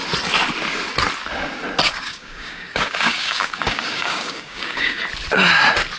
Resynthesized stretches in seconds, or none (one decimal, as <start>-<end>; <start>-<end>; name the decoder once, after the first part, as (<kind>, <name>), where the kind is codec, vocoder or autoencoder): 1.8-5.0 (codec, DAC)